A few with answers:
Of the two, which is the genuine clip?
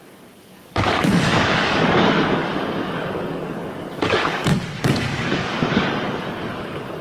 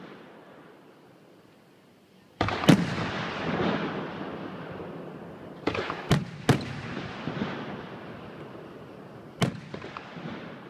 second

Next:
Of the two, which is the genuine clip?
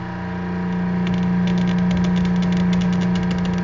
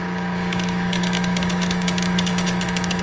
first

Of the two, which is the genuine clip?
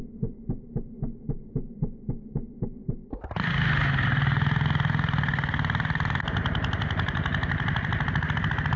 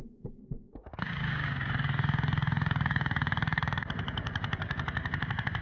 first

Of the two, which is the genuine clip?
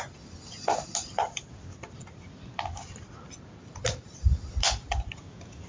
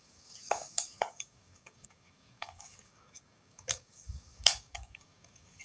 first